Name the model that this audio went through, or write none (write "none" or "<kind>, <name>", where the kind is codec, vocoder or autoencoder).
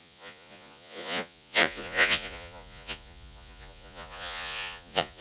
vocoder, Vocos